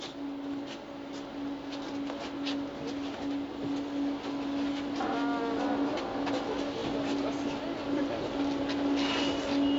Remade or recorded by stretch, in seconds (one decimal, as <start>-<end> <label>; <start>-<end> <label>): 0.0-9.8 recorded